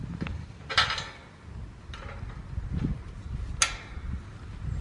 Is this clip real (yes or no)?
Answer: yes